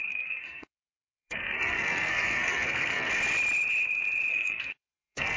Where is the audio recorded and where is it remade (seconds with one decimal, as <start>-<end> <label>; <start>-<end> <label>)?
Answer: 0.0-3.1 remade; 3.1-4.3 recorded; 4.3-5.4 remade